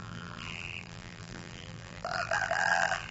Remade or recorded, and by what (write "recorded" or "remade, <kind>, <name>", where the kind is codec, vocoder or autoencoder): remade, vocoder, BigVGAN v2